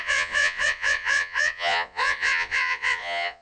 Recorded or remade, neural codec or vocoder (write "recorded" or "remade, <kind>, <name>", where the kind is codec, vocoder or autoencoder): remade, vocoder, Vocos